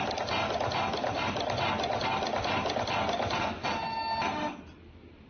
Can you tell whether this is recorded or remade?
recorded